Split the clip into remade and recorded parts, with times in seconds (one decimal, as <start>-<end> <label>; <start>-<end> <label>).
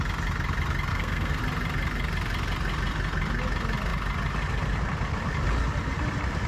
0.0-0.9 recorded; 0.9-1.4 remade; 1.4-6.5 recorded